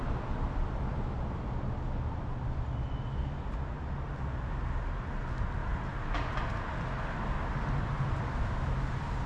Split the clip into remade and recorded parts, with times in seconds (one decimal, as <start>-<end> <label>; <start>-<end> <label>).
0.0-9.3 recorded